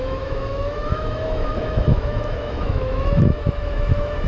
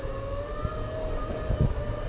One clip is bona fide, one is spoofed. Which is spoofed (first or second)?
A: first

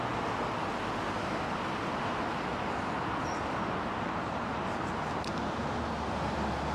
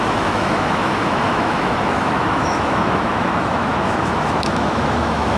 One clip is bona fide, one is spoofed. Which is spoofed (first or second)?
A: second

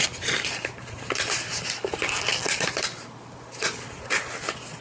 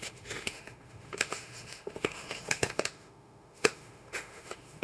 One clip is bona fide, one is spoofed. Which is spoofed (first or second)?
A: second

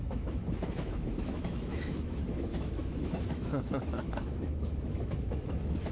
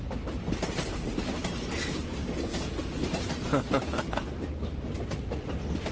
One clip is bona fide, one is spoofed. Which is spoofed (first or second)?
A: first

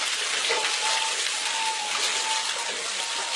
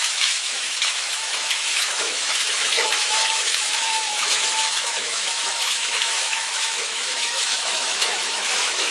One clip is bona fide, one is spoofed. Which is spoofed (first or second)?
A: second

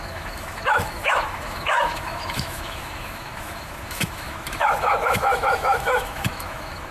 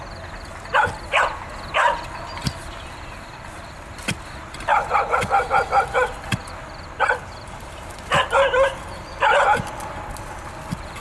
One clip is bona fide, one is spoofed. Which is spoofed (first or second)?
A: first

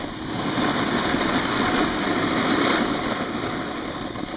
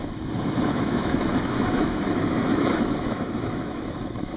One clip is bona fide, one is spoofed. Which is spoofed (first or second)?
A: second